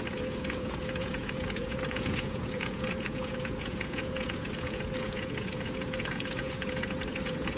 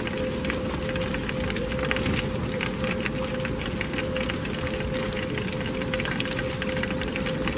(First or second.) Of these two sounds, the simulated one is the first